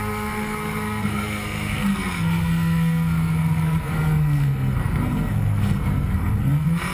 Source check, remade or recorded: remade